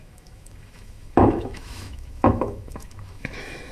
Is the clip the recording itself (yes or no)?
no